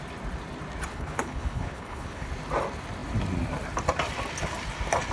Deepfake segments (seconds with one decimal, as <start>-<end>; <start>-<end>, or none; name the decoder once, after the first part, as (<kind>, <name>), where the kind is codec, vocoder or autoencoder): 0.9-2.3 (codec, HILCodec)